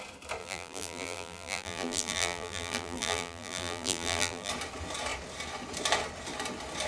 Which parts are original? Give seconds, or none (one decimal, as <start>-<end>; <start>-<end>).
0.0-0.4; 4.5-6.9